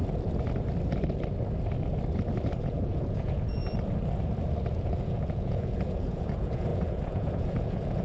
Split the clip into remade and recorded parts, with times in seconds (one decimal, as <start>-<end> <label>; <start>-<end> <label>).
0.0-2.6 recorded; 2.6-3.6 remade; 3.6-4.7 recorded; 4.7-8.0 remade